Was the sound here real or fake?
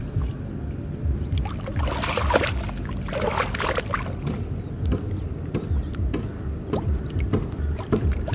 real